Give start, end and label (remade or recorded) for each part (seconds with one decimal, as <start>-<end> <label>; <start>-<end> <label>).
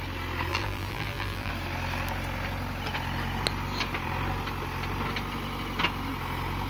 0.0-0.5 recorded; 0.5-1.5 remade; 1.5-6.7 recorded